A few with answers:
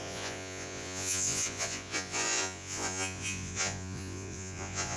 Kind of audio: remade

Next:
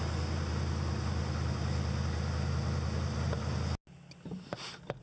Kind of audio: recorded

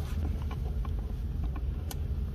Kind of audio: recorded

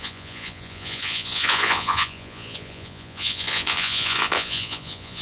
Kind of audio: remade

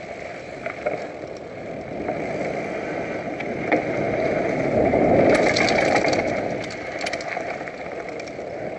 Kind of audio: recorded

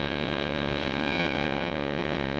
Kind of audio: remade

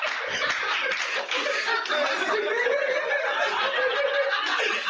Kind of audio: recorded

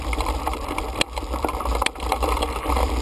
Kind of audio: remade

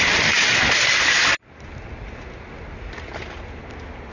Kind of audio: recorded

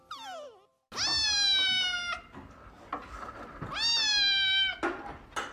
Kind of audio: recorded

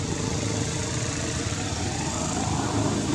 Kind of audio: recorded